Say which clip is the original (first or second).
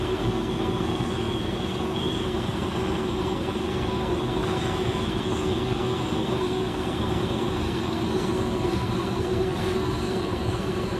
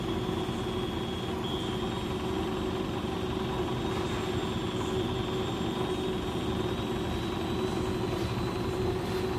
second